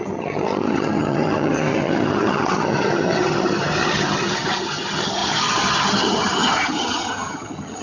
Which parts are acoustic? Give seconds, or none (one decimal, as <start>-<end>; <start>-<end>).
none